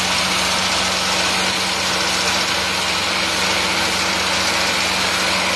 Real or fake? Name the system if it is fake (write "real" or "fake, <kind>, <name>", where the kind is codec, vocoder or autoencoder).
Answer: real